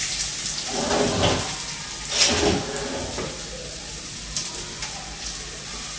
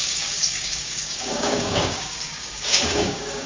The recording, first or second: first